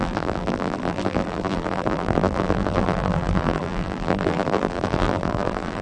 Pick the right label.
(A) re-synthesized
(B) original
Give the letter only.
A